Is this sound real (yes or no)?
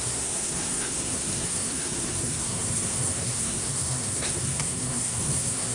no